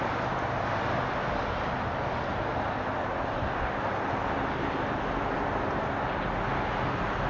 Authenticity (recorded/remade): recorded